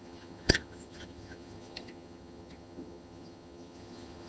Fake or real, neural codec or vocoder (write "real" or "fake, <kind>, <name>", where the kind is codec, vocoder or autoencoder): fake, vocoder, HiFi-GAN